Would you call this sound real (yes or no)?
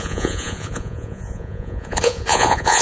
no